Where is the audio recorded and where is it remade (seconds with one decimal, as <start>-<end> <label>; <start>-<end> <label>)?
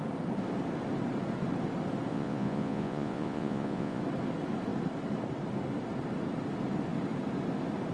0.0-2.1 recorded; 2.1-4.0 remade; 4.0-7.9 recorded